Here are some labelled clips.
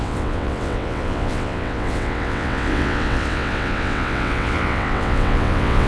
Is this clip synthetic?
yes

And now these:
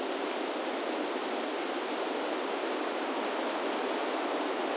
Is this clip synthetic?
no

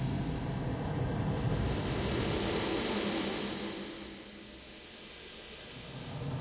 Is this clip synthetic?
no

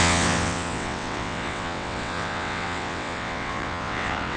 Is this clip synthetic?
yes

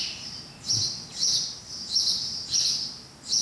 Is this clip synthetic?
no